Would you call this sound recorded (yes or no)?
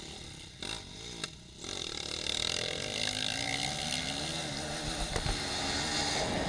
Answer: yes